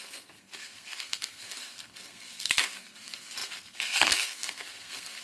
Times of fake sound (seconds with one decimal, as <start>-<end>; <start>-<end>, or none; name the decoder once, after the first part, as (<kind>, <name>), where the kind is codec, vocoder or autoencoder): 0.0-5.2 (codec, SNAC)

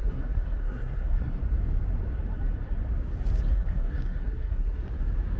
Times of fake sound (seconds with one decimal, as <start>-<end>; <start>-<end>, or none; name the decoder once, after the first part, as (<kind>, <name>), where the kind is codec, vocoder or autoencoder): 0.0-1.4 (codec, SNAC); 3.5-4.8